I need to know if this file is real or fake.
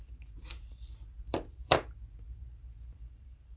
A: fake